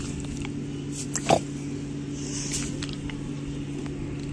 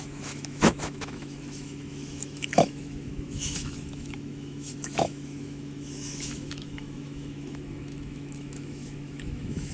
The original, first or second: first